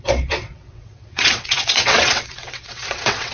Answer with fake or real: fake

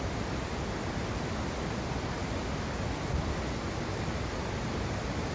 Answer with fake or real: real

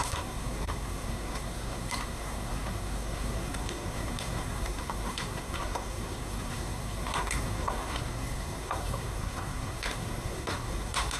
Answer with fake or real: fake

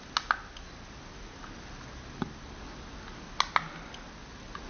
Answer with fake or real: real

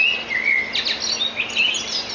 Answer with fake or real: real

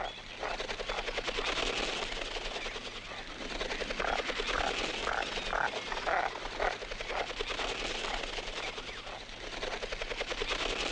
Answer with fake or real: real